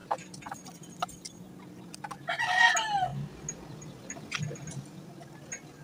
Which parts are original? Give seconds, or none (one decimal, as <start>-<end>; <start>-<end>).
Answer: 1.3-5.8